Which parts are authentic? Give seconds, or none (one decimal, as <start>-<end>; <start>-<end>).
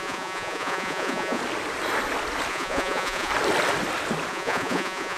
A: 1.4-2.5; 3.3-4.3